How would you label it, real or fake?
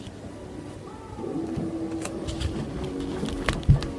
real